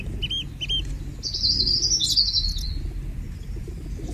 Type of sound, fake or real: real